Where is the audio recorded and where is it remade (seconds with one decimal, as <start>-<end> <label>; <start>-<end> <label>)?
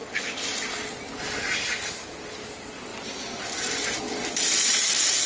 0.0-5.3 recorded